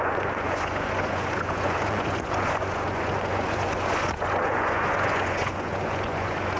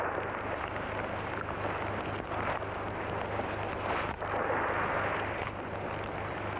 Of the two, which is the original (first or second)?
second